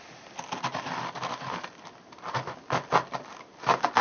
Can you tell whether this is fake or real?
real